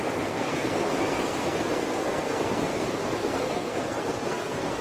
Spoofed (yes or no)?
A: yes